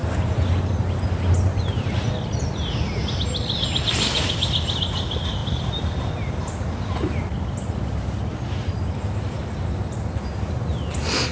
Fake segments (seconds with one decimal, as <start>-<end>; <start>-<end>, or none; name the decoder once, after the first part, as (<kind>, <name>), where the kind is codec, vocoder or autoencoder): none